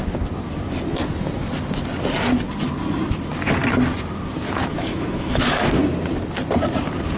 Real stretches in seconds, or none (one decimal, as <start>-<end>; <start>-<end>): 0.0-4.7; 5.6-7.2